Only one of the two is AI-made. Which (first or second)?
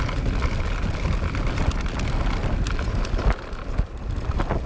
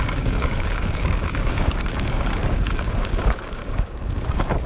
second